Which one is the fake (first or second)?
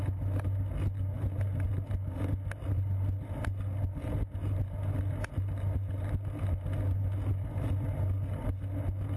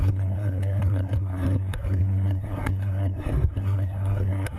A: second